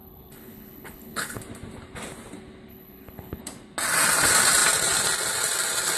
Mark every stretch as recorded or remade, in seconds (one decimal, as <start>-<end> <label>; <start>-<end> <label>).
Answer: 0.0-1.4 remade; 1.4-2.7 recorded; 2.7-3.4 remade; 3.4-6.0 recorded